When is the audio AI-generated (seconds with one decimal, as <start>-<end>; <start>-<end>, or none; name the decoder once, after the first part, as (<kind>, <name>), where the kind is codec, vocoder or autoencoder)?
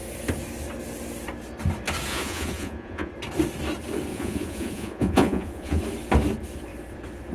2.1-3.1 (vocoder, Vocos); 4.1-5.8